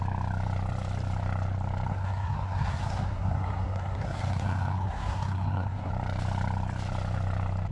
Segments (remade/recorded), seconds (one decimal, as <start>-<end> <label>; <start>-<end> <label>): 0.0-1.9 recorded; 1.9-5.9 remade; 5.9-7.7 recorded